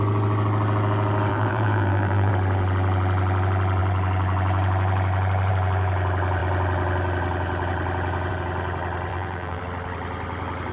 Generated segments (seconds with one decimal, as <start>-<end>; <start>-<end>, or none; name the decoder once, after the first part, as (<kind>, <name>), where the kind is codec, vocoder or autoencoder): 1.3-2.3 (vocoder, BigVGAN v2); 9.1-9.6